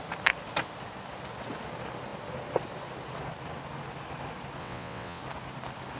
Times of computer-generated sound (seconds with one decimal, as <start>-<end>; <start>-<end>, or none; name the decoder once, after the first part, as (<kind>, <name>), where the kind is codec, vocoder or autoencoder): 4.6-5.2 (vocoder, WaveNeXt)